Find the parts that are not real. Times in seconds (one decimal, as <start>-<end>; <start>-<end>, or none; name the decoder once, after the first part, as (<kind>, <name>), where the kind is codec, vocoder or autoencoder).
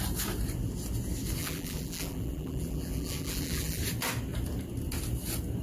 1.4-3.8 (vocoder, BigVGAN v2)